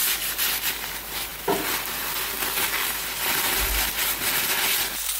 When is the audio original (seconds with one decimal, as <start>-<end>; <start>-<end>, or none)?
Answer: 0.0-5.2